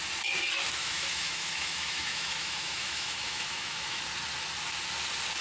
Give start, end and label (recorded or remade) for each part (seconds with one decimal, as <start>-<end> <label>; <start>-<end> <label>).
0.0-0.8 recorded; 0.8-4.0 remade; 4.0-5.4 recorded